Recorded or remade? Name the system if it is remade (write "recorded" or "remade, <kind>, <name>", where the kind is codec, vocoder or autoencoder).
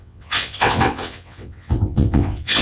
remade, vocoder, WaveNeXt